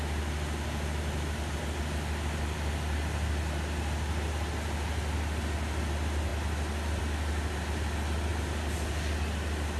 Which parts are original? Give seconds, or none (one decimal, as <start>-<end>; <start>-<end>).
0.0-9.8